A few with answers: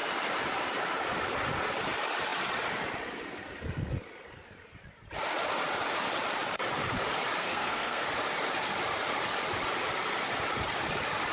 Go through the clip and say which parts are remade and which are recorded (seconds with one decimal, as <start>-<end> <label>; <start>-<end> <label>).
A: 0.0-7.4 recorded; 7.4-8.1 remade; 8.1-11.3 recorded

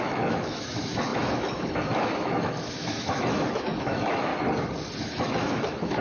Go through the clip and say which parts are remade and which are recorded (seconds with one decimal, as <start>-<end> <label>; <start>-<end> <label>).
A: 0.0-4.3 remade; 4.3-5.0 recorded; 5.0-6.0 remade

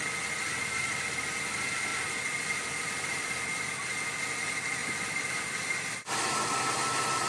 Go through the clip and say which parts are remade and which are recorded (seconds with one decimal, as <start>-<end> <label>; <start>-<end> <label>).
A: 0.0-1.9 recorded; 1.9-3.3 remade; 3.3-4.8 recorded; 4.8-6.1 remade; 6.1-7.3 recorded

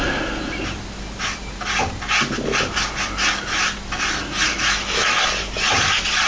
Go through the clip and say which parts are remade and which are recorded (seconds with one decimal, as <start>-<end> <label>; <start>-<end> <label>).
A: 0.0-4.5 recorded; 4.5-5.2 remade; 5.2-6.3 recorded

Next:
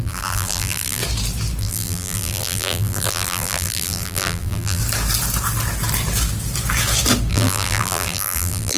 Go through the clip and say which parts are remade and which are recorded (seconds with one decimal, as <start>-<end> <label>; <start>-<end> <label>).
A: 0.0-1.0 remade; 1.0-1.6 recorded; 1.6-4.8 remade; 4.8-7.3 recorded; 7.3-8.8 remade

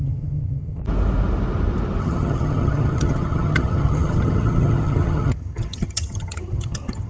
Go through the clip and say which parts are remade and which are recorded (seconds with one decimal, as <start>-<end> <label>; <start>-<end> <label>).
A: 0.0-0.8 remade; 0.8-2.0 recorded; 2.0-7.1 remade

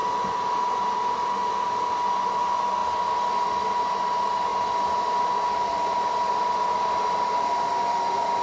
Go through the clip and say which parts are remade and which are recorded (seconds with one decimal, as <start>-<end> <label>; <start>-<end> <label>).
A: 0.0-8.4 recorded